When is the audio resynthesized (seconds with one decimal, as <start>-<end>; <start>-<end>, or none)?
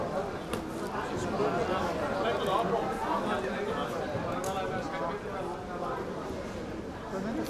none